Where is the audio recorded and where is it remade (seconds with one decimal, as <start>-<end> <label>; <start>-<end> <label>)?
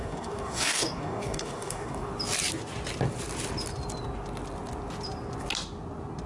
0.0-2.1 remade; 2.1-6.3 recorded